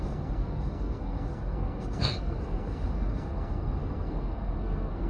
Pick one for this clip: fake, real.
fake